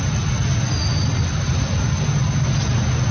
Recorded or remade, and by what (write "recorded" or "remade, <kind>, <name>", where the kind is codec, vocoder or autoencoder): recorded